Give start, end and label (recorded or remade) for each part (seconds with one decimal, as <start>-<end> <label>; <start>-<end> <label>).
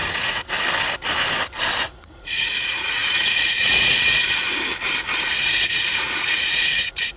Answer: 0.0-0.4 remade; 0.4-1.8 recorded; 1.8-4.2 remade; 4.2-5.2 recorded; 5.2-7.2 remade